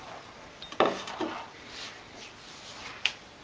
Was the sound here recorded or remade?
recorded